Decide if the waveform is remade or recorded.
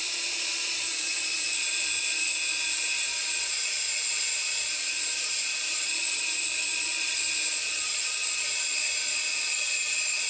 remade